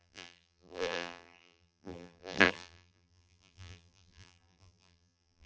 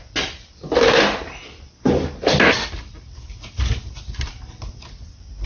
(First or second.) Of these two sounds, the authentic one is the second